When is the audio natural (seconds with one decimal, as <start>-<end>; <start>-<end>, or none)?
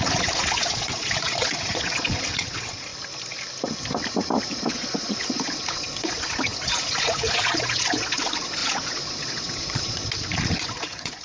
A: 2.9-4.4